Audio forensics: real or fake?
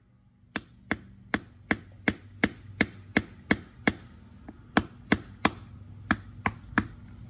real